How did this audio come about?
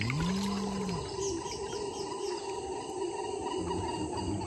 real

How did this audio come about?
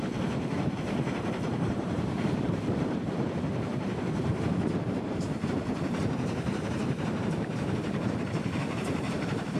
fake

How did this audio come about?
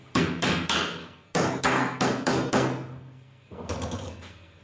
fake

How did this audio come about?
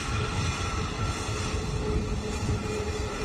real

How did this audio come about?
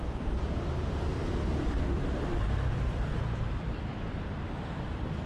fake